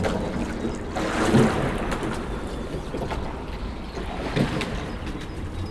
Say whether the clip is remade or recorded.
recorded